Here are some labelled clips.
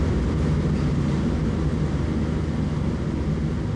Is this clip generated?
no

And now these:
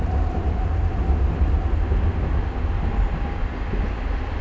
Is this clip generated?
no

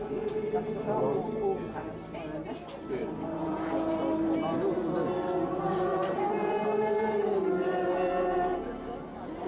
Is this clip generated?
no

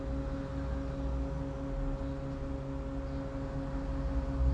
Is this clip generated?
no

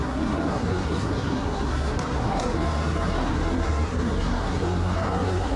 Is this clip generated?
yes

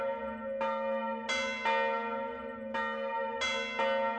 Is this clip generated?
no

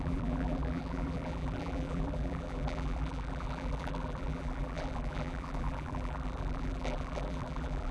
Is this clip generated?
yes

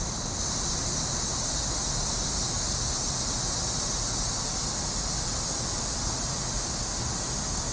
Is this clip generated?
no